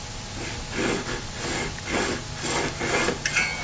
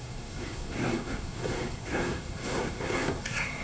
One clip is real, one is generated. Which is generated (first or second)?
second